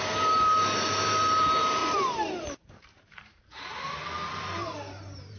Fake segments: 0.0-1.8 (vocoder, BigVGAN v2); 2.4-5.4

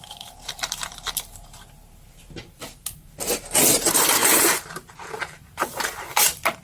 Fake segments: 0.0-6.6 (vocoder, BigVGAN v2)

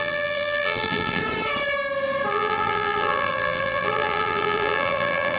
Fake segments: 0.0-1.2 (vocoder, BigVGAN v2); 2.3-5.4

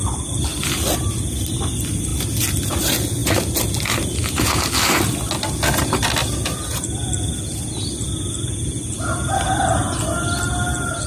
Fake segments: 0.5-1.0 (vocoder, BigVGAN v2)

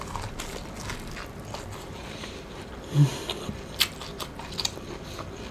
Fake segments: 2.0-2.7 (vocoder, BigVGAN v2)

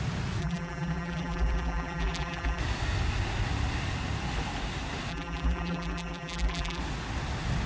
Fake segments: 0.4-2.6 (vocoder, BigVGAN v2); 5.1-6.8

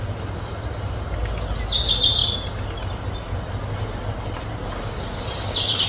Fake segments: 0.5-1.2 (vocoder, BigVGAN v2)